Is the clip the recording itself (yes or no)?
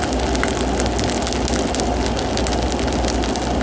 yes